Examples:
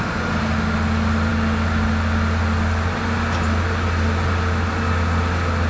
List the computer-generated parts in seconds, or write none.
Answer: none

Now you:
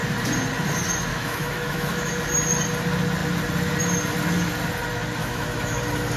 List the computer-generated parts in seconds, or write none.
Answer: 1.1-2.2 (autoencoder, DAC-VAE); 5.2-5.8

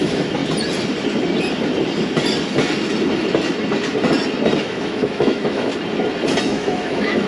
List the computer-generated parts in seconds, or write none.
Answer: 0.0-0.4 (autoencoder, DAC-VAE); 4.6-5.7; 6.4-7.3

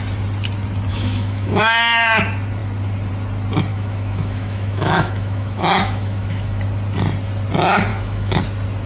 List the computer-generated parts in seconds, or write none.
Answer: 0.9-1.6 (autoencoder, DAC-VAE); 3.7-6.6; 7.9-8.4

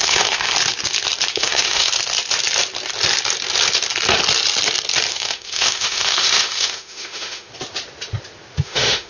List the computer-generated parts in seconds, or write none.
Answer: 0.0-0.5 (autoencoder, DAC-VAE); 1.3-1.9; 5.1-7.5; 8.6-9.1